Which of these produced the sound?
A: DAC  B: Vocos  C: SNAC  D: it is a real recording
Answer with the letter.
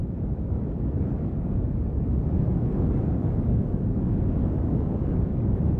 A